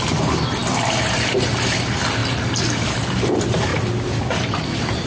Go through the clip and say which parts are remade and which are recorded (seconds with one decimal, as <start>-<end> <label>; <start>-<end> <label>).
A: 0.0-0.6 recorded; 0.6-1.3 remade; 1.3-2.2 recorded; 2.2-2.9 remade; 2.9-5.1 recorded